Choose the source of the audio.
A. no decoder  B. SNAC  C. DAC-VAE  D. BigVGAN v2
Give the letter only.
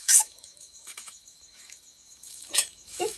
C